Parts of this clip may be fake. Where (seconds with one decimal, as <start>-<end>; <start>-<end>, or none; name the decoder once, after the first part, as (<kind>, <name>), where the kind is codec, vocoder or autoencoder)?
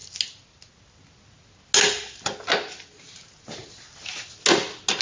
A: none